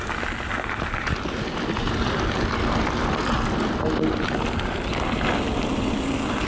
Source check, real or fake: real